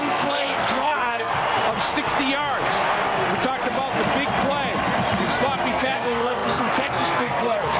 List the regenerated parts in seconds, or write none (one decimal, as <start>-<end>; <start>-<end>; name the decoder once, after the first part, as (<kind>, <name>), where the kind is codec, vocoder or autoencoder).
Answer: 0.0-1.3 (codec, SNAC); 5.7-7.8

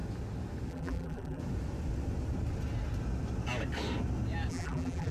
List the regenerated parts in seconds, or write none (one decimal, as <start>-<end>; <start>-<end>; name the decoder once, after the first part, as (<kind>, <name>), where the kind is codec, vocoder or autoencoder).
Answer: 0.7-1.4 (vocoder, BigVGAN v2); 4.5-5.1

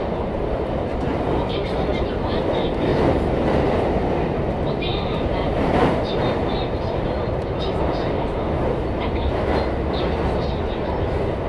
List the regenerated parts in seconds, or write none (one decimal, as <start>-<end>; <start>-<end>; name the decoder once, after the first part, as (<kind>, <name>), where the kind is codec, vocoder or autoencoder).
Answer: 2.9-3.9 (vocoder, BigVGAN v2)

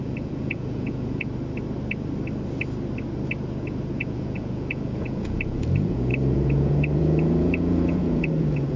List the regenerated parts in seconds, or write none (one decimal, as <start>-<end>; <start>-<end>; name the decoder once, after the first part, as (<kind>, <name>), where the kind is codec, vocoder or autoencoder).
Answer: 0.0-1.3 (vocoder, Vocos); 3.9-8.8